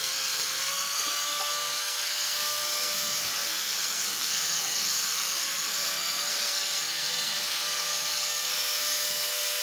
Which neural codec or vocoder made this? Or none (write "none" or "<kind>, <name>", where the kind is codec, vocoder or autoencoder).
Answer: codec, SNAC